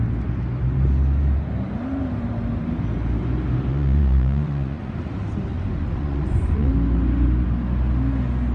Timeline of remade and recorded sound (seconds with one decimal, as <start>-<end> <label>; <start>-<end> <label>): 0.0-3.7 recorded; 3.7-4.9 remade; 4.9-5.5 recorded; 5.5-6.7 remade; 6.7-8.5 recorded